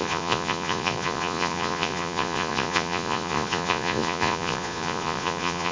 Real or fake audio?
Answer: fake